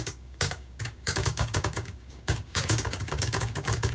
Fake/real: fake